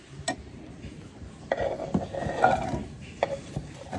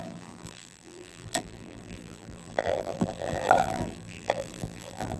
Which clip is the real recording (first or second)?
first